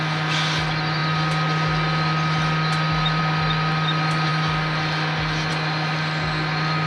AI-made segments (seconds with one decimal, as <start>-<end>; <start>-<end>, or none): none